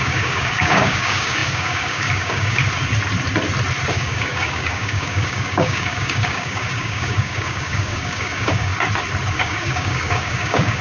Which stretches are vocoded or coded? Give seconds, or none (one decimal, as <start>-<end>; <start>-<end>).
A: 0.0-2.6; 3.9-8.7; 9.3-10.8